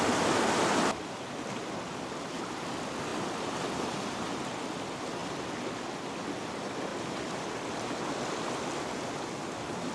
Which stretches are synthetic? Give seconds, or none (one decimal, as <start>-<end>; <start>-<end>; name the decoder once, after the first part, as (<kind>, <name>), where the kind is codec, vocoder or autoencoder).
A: none